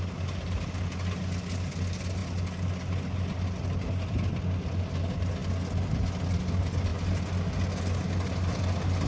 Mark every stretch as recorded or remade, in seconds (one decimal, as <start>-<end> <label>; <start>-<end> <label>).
0.0-9.1 recorded